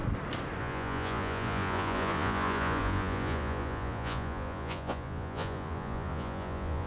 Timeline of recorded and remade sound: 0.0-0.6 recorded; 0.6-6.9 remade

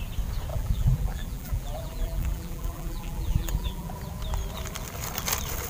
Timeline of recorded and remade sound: 0.0-0.5 recorded; 0.5-3.9 remade; 3.9-5.7 recorded

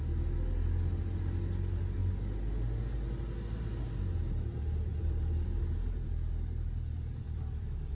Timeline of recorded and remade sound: 0.0-4.9 recorded; 4.9-7.9 remade

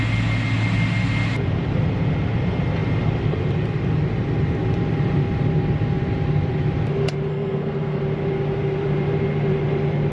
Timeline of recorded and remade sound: 0.0-7.3 recorded; 7.3-8.0 remade; 8.0-10.1 recorded

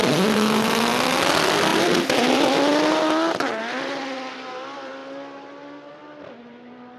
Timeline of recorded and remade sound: 0.0-2.7 remade; 2.7-3.6 recorded; 3.6-5.0 remade; 5.0-5.9 recorded; 5.9-7.0 remade

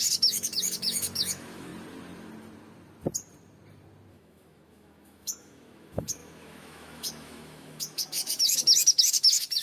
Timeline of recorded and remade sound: 0.0-1.7 remade; 1.7-4.1 recorded; 4.1-9.6 remade

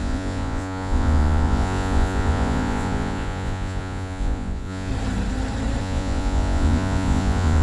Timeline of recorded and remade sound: 0.0-4.9 remade; 4.9-5.8 recorded; 5.8-7.6 remade

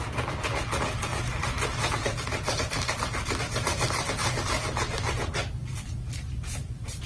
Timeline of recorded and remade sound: 0.0-1.1 remade; 1.1-1.7 recorded; 1.7-7.1 remade